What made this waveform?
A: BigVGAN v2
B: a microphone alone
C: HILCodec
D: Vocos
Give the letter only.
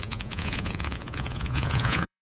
D